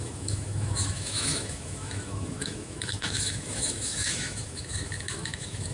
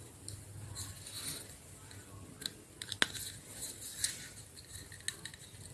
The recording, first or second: second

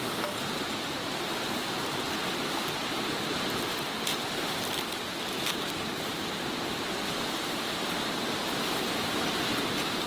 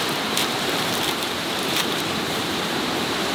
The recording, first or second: first